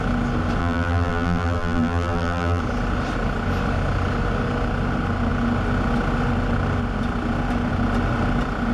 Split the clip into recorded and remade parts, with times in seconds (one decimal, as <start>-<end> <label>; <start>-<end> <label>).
0.0-0.6 recorded; 0.6-2.6 remade; 2.6-8.7 recorded